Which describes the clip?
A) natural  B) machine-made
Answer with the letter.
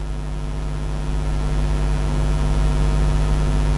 A